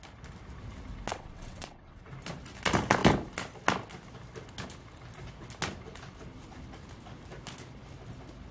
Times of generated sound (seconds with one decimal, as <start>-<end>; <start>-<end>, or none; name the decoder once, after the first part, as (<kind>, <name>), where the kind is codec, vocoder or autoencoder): 1.1-2.1 (vocoder, WaveNeXt)